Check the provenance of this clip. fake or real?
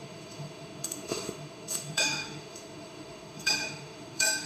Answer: fake